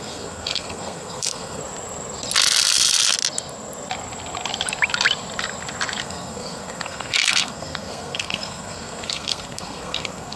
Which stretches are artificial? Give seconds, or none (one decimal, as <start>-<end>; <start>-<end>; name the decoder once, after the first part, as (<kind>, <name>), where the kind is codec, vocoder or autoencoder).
0.0-1.6 (codec, SNAC); 6.0-10.4